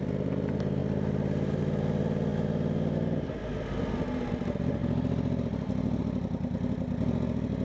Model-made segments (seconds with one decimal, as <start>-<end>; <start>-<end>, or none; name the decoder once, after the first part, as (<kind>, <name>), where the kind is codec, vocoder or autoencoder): none